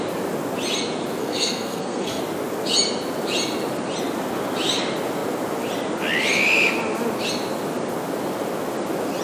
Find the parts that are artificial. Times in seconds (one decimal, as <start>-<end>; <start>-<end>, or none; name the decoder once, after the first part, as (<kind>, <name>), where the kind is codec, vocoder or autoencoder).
1.2-2.2 (codec, SNAC)